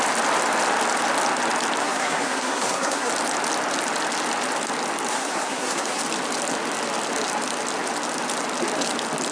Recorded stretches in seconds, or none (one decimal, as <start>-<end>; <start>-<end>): 0.0-1.8; 3.1-5.1; 6.0-9.3